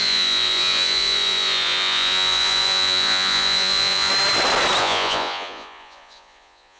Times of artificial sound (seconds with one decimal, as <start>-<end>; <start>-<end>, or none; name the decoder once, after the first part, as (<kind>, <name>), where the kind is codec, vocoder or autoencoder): 0.0-4.1 (vocoder, Vocos); 4.8-6.8